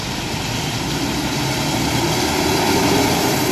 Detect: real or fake fake